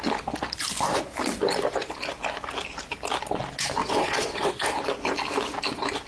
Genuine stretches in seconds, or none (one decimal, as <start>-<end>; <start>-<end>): 0.0-3.8; 4.6-6.1